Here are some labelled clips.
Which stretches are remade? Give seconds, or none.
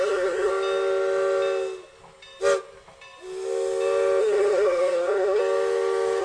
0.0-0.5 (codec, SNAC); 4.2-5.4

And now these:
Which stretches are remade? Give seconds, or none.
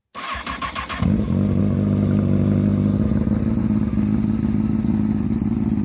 none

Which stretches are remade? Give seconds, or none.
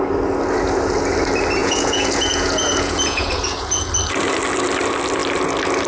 1.6-3.9 (vocoder, Vocos)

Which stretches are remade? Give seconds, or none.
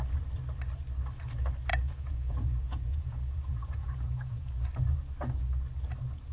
1.7-4.7 (vocoder, Vocos)